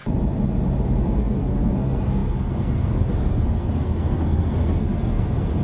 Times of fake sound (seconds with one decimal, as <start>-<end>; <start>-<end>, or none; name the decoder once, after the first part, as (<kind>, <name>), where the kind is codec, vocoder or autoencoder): 1.0-5.6 (codec, SNAC)